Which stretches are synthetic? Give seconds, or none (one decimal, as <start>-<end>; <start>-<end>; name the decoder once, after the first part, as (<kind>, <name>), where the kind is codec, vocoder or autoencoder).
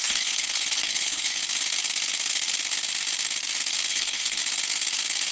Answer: 0.0-1.4 (codec, HILCodec); 3.9-4.4